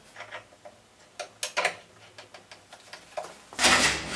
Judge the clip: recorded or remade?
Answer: recorded